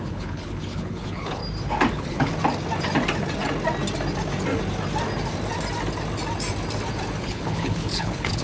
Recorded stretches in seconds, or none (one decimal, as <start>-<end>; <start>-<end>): 1.4-1.9; 2.3-7.2